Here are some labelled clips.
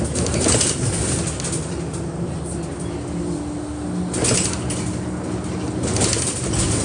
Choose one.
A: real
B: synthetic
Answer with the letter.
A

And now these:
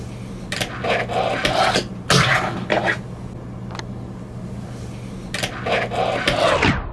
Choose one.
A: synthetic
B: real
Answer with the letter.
B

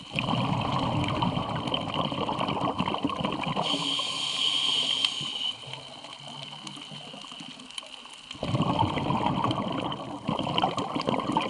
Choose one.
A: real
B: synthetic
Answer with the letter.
A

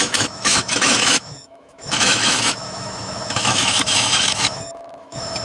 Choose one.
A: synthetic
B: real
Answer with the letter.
A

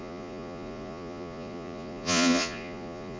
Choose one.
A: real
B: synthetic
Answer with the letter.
B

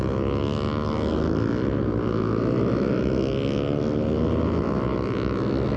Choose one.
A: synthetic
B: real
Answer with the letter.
B